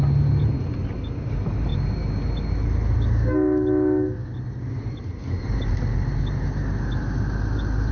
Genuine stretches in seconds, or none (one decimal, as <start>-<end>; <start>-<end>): 0.0-7.9